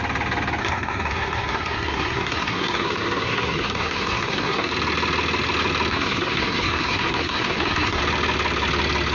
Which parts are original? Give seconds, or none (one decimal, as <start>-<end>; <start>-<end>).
0.0-0.6; 4.7-5.9; 8.0-9.1